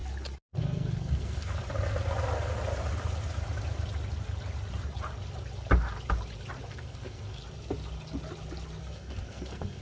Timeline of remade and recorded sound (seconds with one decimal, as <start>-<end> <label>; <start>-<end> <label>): 0.0-0.6 recorded; 0.6-1.5 remade; 1.5-6.7 recorded; 6.7-7.4 remade; 7.4-8.8 recorded; 8.8-9.8 remade